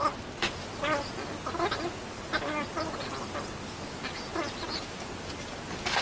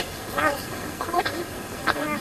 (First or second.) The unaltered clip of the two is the first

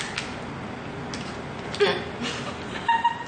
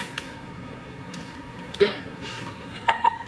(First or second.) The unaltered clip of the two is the first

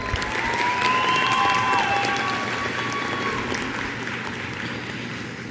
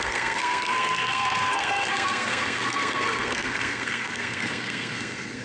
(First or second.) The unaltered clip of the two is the first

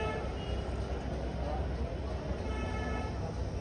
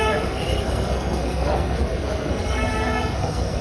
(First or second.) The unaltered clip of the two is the first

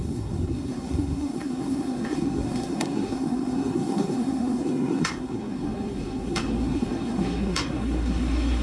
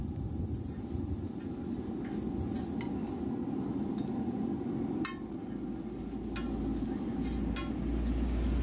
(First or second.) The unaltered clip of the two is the second